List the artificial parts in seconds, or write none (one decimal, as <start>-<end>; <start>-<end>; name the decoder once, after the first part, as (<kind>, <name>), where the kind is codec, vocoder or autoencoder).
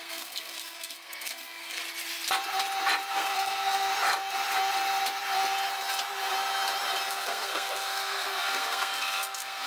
0.0-1.8 (codec, SNAC); 3.1-3.9; 7.1-9.7